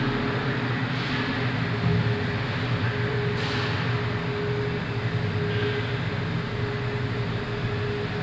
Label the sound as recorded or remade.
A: recorded